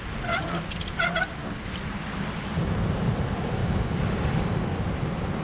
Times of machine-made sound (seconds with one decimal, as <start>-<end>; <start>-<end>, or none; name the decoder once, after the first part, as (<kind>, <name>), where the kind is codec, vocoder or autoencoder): 3.6-4.8 (codec, DAC)